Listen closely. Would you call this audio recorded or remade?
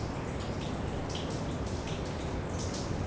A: recorded